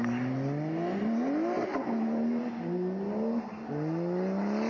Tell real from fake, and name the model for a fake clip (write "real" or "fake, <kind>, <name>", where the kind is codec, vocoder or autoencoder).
real